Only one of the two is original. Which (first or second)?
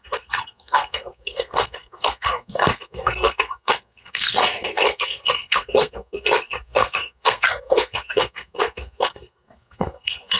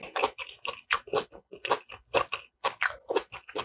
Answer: second